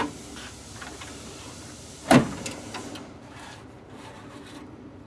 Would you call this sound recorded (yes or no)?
no